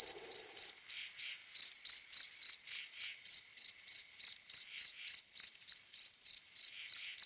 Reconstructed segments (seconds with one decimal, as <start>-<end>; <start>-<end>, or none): 0.0-1.4; 2.6-7.3